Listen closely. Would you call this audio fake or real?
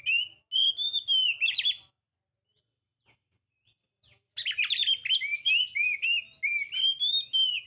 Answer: real